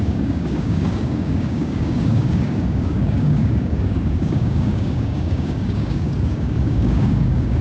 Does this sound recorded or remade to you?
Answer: remade